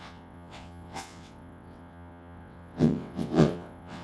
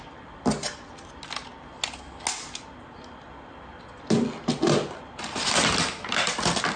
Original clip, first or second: second